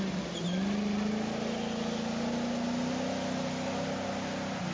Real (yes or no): yes